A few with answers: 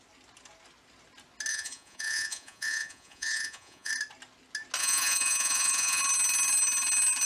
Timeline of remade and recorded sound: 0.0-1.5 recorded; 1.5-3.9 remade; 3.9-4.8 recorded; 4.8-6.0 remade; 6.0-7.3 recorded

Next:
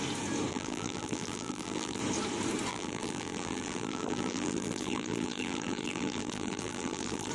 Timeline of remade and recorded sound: 0.0-0.5 recorded; 0.5-2.0 remade; 2.0-2.7 recorded; 2.7-7.3 remade